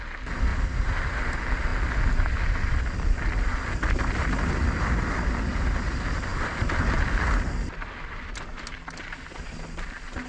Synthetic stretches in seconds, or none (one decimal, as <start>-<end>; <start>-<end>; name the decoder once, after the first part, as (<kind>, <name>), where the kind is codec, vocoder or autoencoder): 0.5-1.1 (vocoder, BigVGAN v2); 6.3-7.5